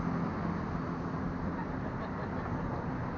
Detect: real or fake real